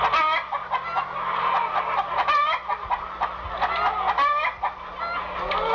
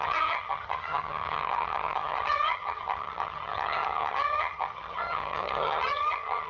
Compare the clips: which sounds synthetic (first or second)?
second